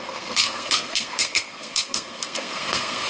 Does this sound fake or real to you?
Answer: fake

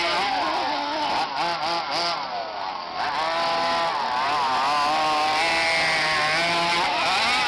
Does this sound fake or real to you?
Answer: real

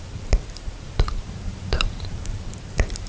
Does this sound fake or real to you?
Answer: fake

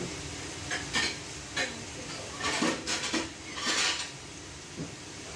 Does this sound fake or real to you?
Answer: real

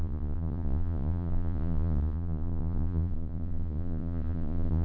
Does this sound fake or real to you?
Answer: fake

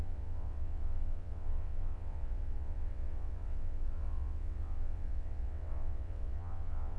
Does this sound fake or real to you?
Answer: fake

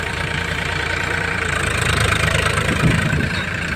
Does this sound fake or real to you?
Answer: fake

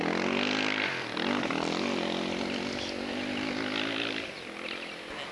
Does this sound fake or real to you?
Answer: real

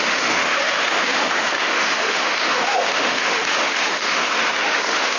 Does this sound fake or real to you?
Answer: fake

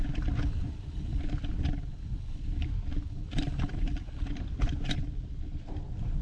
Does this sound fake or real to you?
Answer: fake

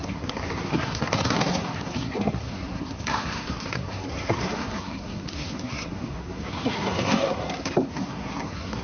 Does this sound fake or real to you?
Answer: fake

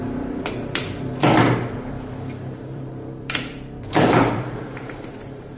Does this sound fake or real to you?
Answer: fake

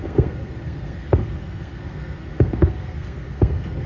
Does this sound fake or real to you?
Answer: fake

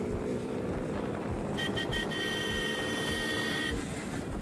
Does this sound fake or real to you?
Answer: fake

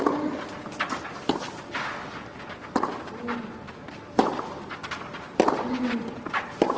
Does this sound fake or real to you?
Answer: real